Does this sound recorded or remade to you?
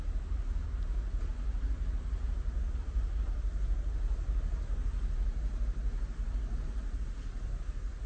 recorded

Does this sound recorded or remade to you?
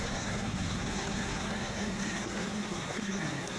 remade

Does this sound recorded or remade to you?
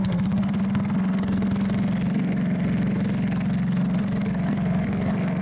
remade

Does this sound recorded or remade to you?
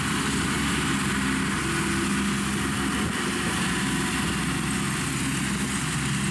recorded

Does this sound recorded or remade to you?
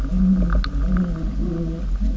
recorded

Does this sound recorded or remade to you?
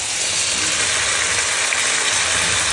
recorded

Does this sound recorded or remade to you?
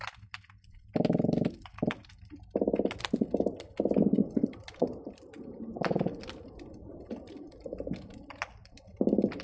recorded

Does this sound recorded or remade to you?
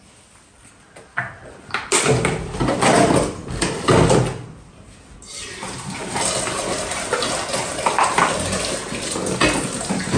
recorded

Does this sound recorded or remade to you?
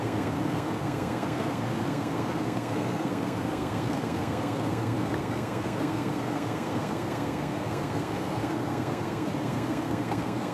remade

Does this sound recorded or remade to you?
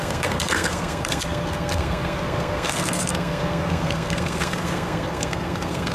remade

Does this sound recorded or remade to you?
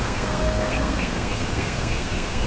remade